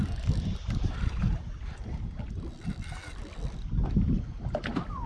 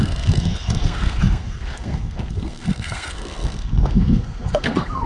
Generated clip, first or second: second